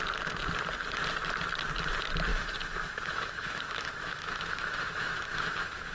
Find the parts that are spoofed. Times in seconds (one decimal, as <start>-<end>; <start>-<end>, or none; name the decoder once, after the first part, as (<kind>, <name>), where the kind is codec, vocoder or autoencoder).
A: 2.3-5.9 (autoencoder, DAC-VAE)